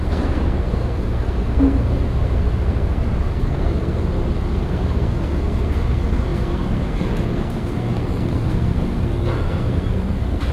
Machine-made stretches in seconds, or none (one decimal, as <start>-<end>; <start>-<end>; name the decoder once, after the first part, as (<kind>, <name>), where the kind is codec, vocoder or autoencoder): 0.0-10.5 (codec, SNAC)